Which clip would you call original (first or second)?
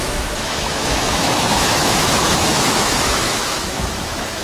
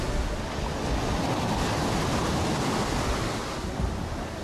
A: second